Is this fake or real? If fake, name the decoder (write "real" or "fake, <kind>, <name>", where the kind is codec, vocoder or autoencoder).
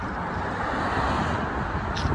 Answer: fake, vocoder, BigVGAN v2